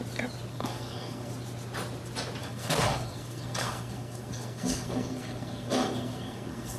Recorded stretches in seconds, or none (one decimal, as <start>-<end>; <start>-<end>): 0.0-0.5; 1.3-2.4

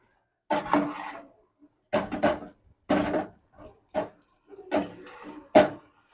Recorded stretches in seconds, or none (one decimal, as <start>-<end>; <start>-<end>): 0.0-6.1

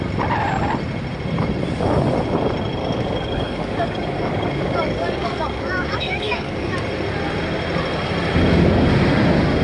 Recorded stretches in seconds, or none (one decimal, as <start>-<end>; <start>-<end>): 0.0-2.8; 6.7-9.6

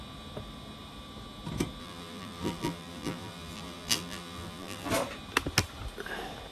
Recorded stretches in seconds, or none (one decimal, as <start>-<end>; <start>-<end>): 0.0-1.8; 4.9-6.5

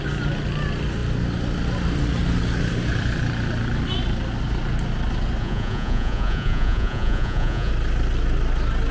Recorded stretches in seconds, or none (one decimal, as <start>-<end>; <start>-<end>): 0.0-5.4; 7.7-8.9

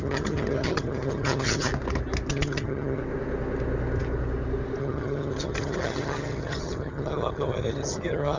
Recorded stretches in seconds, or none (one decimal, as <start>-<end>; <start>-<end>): 1.7-2.3; 3.0-4.8